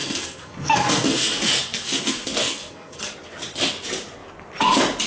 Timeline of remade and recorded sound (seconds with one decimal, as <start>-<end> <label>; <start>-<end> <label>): 0.0-3.1 remade; 3.1-5.1 recorded